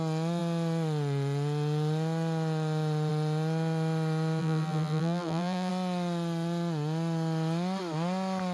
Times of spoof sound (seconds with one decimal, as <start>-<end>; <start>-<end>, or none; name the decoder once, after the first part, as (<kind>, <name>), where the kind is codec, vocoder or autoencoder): 4.4-5.7 (vocoder, BigVGAN v2)